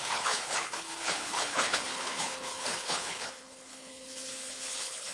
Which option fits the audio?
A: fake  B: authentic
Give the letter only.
A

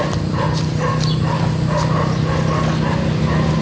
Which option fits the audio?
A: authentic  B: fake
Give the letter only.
A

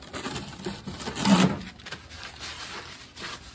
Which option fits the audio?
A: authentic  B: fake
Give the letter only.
A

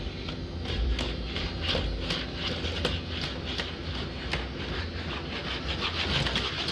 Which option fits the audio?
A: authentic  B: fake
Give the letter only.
A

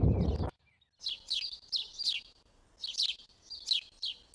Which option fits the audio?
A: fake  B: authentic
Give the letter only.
B